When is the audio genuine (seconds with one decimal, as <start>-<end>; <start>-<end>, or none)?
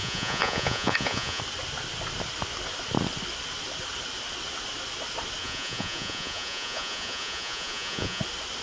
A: 1.4-5.4; 8.2-8.6